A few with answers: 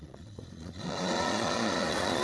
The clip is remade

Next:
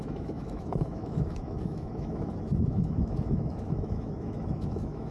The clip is remade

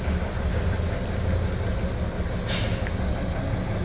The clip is recorded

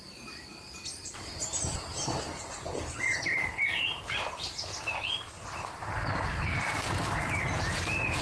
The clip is remade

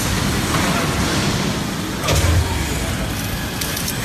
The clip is recorded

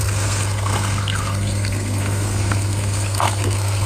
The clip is remade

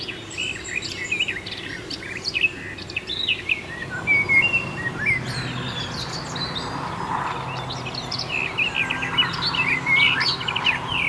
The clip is recorded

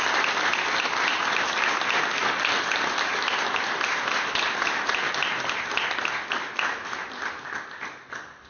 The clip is recorded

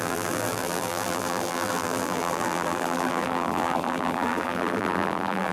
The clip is remade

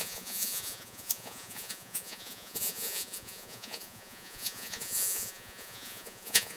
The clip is remade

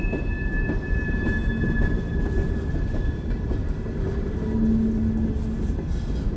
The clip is recorded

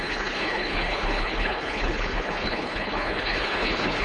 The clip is remade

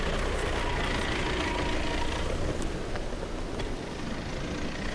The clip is recorded